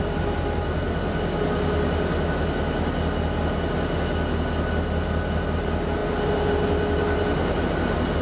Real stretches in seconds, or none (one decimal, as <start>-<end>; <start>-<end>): 0.0-8.2